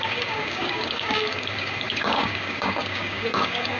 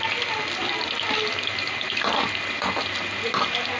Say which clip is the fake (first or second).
first